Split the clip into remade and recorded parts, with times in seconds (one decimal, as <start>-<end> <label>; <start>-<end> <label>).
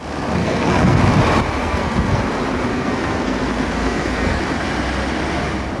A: 0.0-0.4 recorded; 0.4-1.0 remade; 1.0-1.6 recorded; 1.6-2.2 remade; 2.2-2.7 recorded; 2.7-4.4 remade; 4.4-5.8 recorded